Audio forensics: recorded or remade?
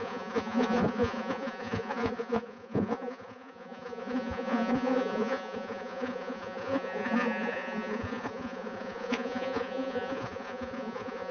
remade